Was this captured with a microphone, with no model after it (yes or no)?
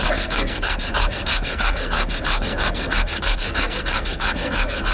no